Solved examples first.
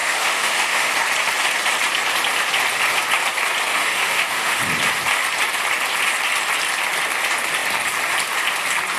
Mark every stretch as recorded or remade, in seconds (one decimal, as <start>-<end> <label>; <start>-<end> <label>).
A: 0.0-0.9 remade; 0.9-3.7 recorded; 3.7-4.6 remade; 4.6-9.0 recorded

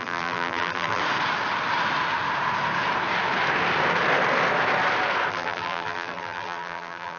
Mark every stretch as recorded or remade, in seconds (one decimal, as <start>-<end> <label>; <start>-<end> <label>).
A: 0.0-1.0 remade; 1.0-5.3 recorded; 5.3-7.2 remade

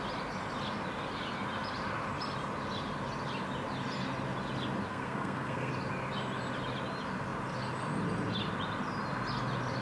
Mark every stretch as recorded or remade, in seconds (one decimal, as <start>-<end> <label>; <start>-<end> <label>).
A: 0.0-4.9 recorded; 4.9-5.7 remade; 5.7-9.8 recorded

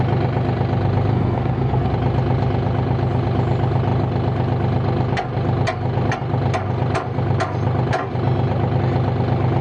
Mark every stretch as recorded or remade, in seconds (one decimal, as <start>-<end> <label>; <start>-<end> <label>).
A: 0.0-1.1 recorded; 1.1-1.9 remade; 1.9-9.6 recorded

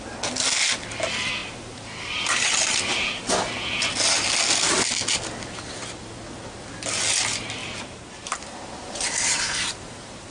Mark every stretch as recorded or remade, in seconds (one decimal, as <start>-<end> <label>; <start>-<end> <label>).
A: 0.0-1.4 recorded; 1.4-3.2 remade; 3.2-7.6 recorded; 7.6-10.3 remade

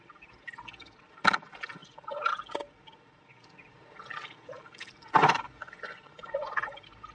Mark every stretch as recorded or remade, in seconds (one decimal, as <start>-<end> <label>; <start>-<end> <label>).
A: 0.0-5.2 recorded; 5.2-6.6 remade; 6.6-7.1 recorded

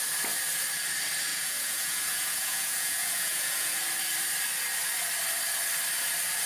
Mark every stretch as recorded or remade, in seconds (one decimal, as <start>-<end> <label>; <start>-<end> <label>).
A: 0.0-1.3 recorded; 1.3-3.8 remade; 3.8-6.5 recorded